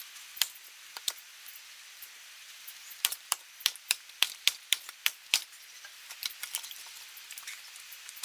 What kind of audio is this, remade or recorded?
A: remade